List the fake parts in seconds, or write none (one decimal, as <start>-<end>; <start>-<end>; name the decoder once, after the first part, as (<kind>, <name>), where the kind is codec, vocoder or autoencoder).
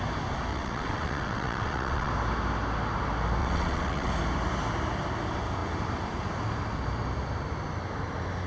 0.5-2.1 (vocoder, WaveNeXt); 3.4-4.1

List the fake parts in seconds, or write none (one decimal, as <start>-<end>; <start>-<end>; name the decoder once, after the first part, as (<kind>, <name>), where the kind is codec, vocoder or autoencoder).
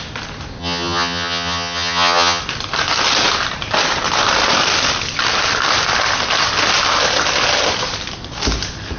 0.6-2.4 (vocoder, HiFi-GAN)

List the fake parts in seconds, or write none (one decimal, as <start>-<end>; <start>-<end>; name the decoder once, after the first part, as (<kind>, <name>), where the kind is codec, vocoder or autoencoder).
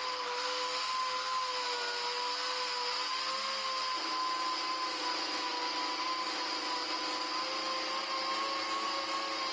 none